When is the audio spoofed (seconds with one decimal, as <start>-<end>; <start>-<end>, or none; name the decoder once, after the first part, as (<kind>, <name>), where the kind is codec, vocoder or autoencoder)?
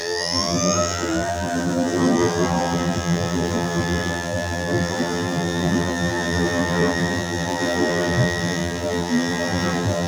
0.0-10.1 (vocoder, BigVGAN v2)